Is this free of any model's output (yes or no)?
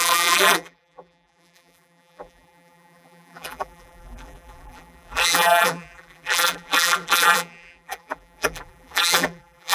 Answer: no